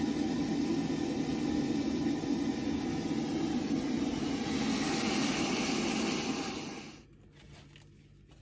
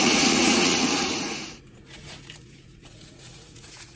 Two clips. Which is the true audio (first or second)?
first